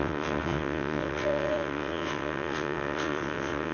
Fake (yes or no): yes